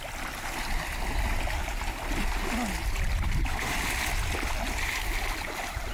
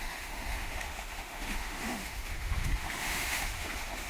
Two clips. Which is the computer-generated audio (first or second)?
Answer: second